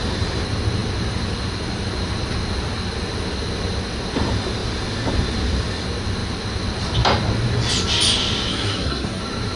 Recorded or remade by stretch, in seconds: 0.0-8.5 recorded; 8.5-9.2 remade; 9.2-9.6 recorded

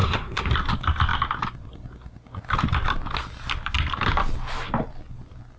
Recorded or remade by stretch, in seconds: 0.0-0.5 remade; 0.5-5.6 recorded

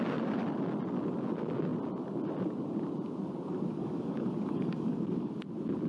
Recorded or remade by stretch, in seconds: 0.0-3.5 recorded; 3.5-5.3 remade; 5.3-5.9 recorded

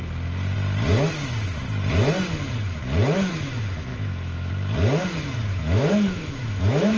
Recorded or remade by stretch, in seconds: 0.0-3.9 recorded; 3.9-4.5 remade; 4.5-5.5 recorded; 5.5-7.0 remade

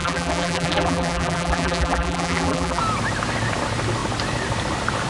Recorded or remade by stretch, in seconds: 0.0-2.8 remade; 2.8-5.1 recorded

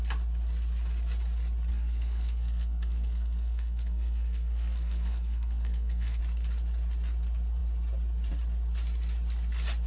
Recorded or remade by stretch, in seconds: 0.0-1.7 recorded; 1.7-6.2 remade; 6.2-9.9 recorded